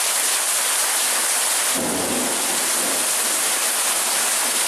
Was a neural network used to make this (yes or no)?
no